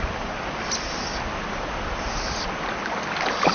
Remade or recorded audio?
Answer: recorded